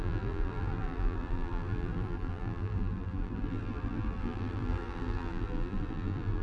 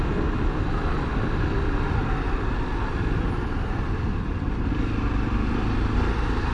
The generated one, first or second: first